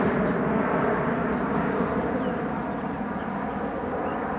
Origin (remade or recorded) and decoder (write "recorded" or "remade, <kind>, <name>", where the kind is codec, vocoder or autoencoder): recorded